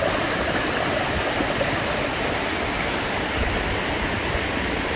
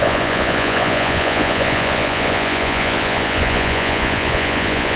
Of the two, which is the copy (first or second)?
second